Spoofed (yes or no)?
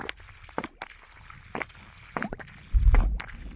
no